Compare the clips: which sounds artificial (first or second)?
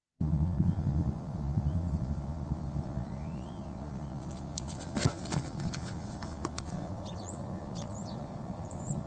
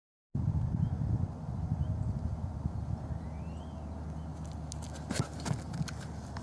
first